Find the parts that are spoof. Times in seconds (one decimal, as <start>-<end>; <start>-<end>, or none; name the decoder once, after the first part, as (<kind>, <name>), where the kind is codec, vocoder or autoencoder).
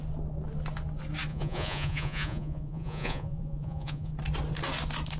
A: 1.3-4.1 (vocoder, Vocos)